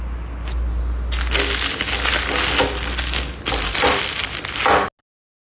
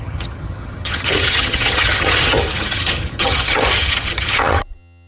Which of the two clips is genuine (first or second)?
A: first